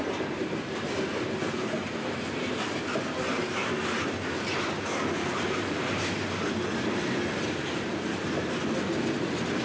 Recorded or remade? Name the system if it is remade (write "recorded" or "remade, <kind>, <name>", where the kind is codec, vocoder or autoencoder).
recorded